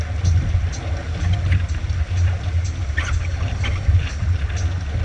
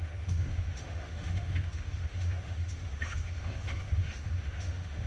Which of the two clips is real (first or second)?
first